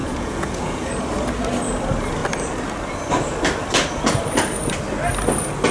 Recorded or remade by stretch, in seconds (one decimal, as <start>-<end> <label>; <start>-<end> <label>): 0.0-0.9 remade; 0.9-5.7 recorded